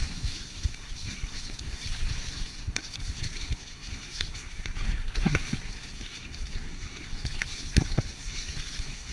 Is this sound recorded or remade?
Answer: remade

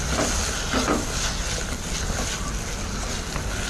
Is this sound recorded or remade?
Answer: recorded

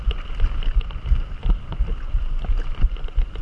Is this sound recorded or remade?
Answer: recorded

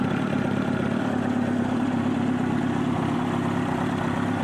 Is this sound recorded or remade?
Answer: recorded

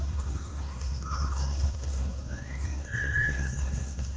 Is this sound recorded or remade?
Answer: remade